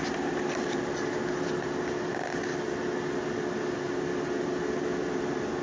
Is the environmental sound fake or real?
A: real